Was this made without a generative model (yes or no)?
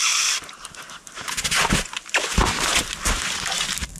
yes